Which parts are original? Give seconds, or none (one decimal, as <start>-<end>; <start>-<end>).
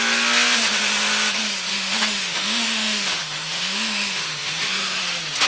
0.0-1.7; 5.0-5.5